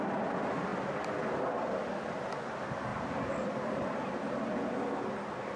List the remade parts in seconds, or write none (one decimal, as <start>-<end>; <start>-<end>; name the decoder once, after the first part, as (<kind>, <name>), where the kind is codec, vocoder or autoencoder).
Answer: 0.7-1.9 (vocoder, BigVGAN v2)